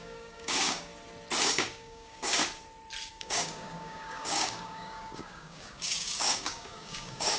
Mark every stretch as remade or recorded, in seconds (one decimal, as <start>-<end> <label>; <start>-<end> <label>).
0.0-0.9 remade; 0.9-1.4 recorded; 1.4-2.4 remade; 2.4-3.1 recorded; 3.1-7.4 remade